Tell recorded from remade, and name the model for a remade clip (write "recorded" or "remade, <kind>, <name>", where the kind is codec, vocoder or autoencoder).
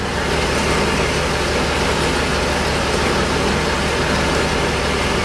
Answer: recorded